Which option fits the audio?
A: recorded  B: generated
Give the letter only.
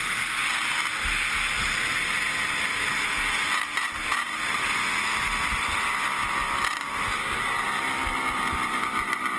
A